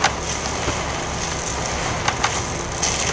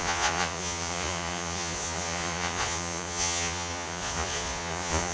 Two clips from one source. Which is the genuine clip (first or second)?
first